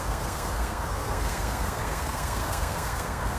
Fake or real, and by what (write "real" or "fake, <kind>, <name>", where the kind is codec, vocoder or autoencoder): fake, codec, SNAC